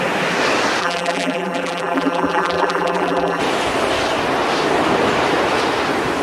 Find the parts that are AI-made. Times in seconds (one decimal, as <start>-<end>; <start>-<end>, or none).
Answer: 0.8-3.4